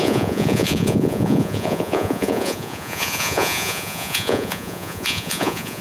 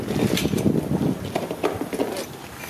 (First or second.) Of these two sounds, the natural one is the second